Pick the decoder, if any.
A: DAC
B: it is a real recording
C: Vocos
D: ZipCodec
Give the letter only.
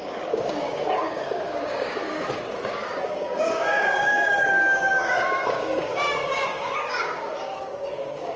A